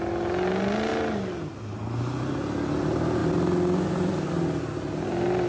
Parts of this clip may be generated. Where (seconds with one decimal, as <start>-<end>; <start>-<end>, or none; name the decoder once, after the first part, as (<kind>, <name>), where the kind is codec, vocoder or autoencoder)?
none

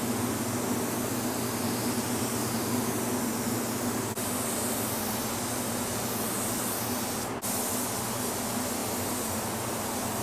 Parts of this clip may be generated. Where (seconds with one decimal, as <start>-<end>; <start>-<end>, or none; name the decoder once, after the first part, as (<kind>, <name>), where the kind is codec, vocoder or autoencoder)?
none

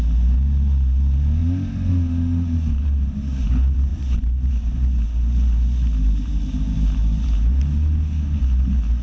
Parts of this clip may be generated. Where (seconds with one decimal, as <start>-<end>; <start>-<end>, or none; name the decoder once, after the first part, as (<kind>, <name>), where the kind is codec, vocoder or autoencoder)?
none

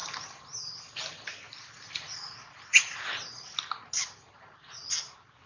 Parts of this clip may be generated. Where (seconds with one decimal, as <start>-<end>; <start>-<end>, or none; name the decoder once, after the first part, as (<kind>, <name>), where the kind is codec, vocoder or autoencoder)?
none

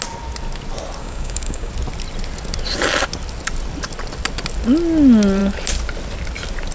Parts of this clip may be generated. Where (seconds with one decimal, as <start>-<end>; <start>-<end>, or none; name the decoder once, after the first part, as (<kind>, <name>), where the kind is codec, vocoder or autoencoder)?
1.0-1.7 (codec, DAC)